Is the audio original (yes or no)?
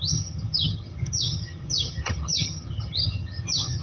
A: no